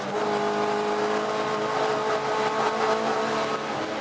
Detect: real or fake real